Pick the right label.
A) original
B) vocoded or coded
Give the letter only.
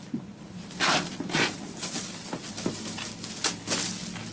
A